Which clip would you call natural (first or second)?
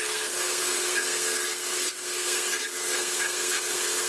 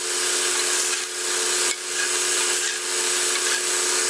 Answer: second